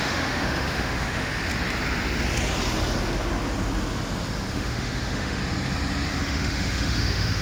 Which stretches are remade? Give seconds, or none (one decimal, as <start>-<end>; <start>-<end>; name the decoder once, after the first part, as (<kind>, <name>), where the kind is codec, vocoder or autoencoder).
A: 0.0-1.5 (autoencoder, DAC-VAE); 4.5-5.4; 6.2-7.4